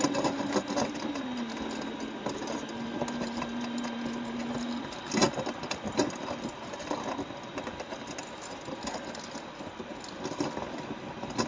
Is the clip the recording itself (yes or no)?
yes